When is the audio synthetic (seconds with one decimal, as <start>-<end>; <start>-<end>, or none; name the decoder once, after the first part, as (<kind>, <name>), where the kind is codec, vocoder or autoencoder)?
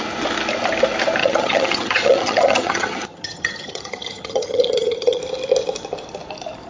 1.2-5.2 (vocoder, HiFi-GAN)